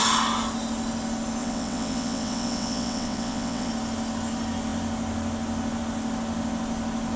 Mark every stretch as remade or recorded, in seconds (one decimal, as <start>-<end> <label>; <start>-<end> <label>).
0.0-1.4 recorded; 1.4-3.7 remade; 3.7-7.2 recorded